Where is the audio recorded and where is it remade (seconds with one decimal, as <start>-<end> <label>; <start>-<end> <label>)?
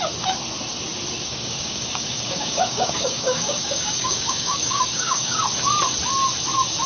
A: 0.0-1.3 recorded; 1.3-5.4 remade; 5.4-6.9 recorded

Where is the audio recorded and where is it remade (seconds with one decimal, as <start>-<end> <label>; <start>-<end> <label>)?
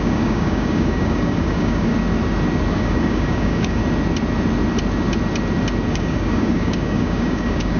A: 0.0-1.9 remade; 1.9-2.7 recorded; 2.7-3.8 remade; 3.8-5.9 recorded; 5.9-7.8 remade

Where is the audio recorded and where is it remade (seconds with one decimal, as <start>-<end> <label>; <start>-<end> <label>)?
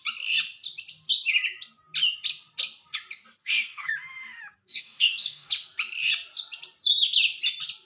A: 0.0-3.4 recorded; 3.4-3.9 remade; 3.9-4.6 recorded; 4.6-5.5 remade; 5.5-7.9 recorded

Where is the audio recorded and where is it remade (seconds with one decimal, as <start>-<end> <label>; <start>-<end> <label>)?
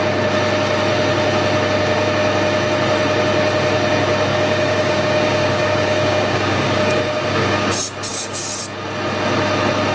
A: 0.0-4.3 recorded; 4.3-7.7 remade; 7.7-8.1 recorded; 8.1-8.6 remade; 8.6-9.9 recorded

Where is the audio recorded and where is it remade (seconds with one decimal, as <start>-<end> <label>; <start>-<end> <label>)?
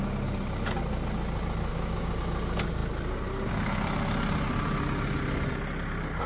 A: 0.0-1.7 recorded; 1.7-2.2 remade; 2.2-6.3 recorded